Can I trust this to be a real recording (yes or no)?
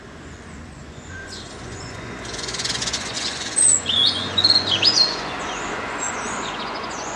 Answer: no